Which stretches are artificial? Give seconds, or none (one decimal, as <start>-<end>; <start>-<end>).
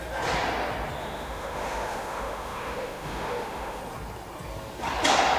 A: 1.0-3.8